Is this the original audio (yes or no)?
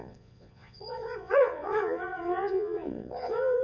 no